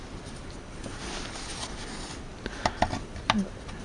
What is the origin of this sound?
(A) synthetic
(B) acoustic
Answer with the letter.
B